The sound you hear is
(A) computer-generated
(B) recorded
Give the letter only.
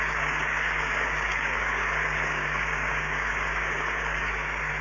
A